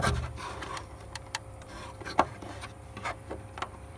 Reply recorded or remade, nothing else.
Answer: remade